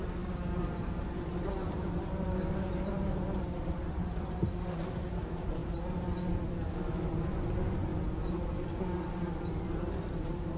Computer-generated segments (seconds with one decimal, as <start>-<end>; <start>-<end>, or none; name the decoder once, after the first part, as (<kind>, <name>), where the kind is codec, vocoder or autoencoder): 0.0-5.6 (vocoder, BigVGAN v2); 6.5-7.9; 9.1-10.6